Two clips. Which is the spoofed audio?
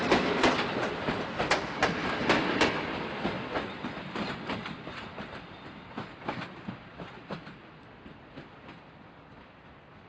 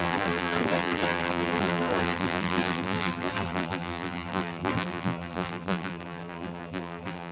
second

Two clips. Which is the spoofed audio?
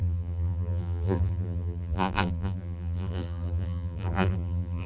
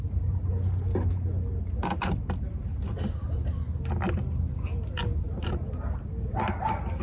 first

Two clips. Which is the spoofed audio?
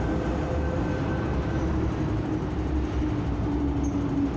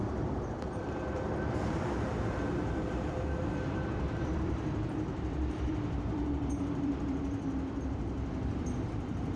second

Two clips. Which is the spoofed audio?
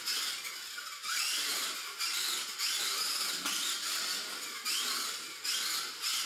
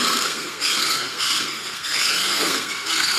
second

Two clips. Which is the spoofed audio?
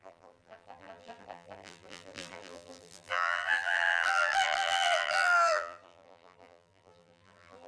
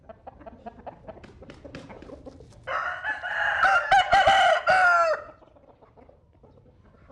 first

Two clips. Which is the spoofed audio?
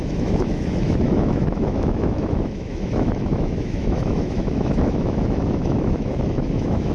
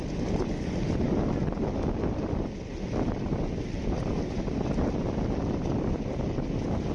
first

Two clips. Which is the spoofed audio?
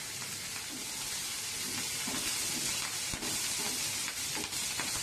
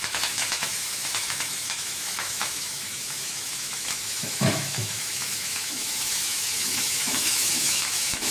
second